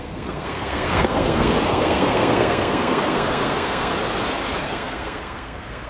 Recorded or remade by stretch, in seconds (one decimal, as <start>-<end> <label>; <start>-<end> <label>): 0.0-3.9 remade; 3.9-4.6 recorded; 4.6-5.9 remade